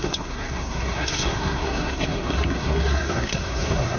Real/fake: fake